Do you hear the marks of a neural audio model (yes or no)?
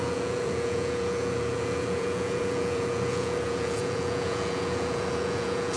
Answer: yes